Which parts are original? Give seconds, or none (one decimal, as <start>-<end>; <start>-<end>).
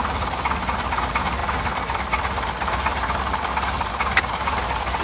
0.0-5.0